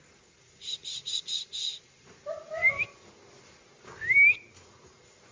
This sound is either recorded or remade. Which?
recorded